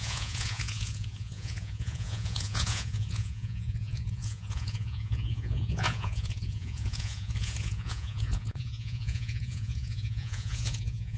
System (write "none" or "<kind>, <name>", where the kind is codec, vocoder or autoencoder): vocoder, Vocos